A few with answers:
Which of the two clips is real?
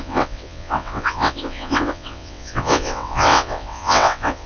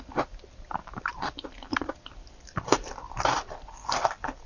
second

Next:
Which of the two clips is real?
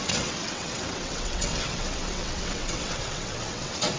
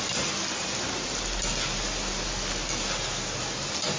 second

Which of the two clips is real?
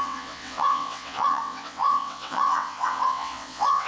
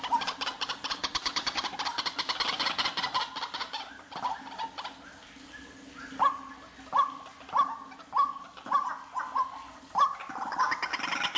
second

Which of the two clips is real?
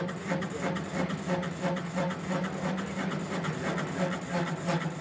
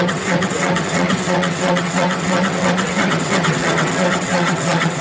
first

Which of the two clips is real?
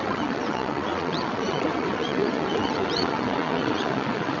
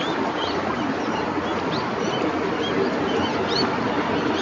second